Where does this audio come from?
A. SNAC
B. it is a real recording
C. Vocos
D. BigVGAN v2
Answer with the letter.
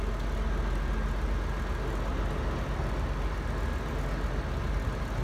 B